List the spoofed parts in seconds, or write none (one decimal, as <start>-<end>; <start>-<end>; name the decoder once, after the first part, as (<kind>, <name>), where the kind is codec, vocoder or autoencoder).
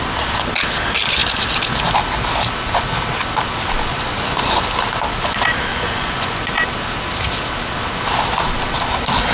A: 3.9-4.6 (vocoder, Vocos); 5.7-6.4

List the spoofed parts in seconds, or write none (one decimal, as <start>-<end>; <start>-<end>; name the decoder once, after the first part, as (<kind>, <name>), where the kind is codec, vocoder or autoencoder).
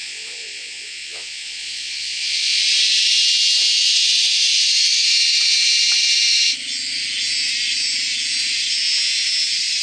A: 0.0-2.6 (vocoder, Vocos)